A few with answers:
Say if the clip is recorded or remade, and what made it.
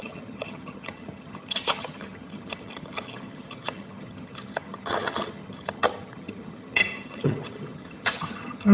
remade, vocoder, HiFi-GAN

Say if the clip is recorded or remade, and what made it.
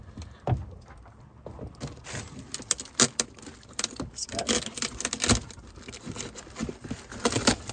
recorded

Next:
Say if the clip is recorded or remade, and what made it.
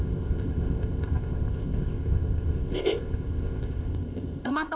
remade, codec, ZipCodec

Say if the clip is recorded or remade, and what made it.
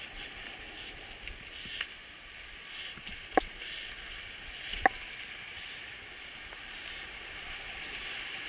recorded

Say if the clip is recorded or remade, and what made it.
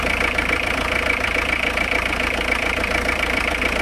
remade, vocoder, BigVGAN v2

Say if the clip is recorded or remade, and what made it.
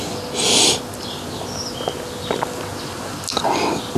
recorded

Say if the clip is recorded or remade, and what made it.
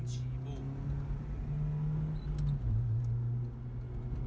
recorded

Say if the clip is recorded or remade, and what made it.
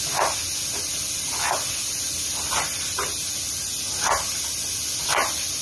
recorded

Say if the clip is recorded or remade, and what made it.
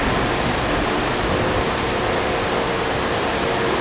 recorded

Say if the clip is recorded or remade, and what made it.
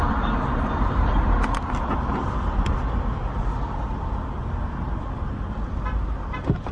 recorded